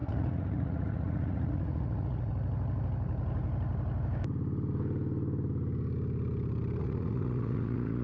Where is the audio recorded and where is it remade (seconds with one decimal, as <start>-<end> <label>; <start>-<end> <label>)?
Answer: 0.0-2.3 remade; 2.3-6.8 recorded; 6.8-8.0 remade